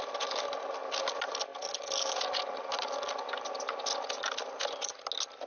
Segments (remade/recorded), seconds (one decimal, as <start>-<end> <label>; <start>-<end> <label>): 0.0-5.5 recorded